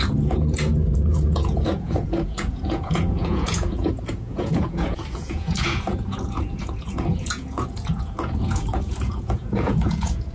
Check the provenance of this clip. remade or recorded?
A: remade